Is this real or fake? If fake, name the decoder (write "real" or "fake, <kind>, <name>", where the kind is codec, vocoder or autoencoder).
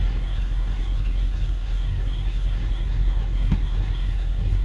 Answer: fake, codec, SNAC